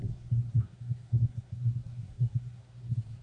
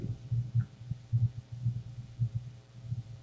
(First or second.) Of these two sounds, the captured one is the second